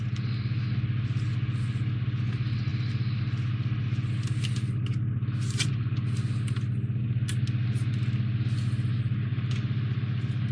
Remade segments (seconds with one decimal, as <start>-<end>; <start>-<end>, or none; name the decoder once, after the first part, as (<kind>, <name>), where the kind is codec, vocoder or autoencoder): none